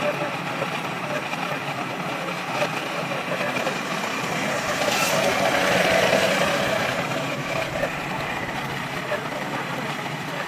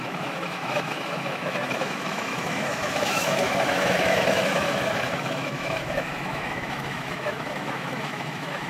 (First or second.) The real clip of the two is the first